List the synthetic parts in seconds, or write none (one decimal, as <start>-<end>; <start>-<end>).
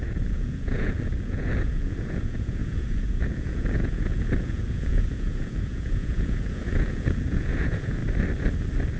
0.0-8.0